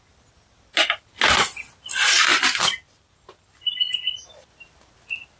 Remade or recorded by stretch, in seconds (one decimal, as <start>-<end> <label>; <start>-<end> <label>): 0.0-5.4 recorded